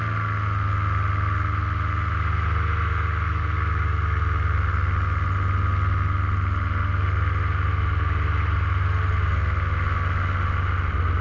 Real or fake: real